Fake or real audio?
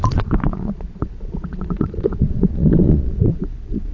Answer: fake